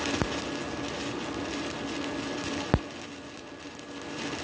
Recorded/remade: recorded